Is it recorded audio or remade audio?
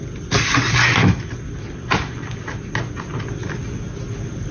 recorded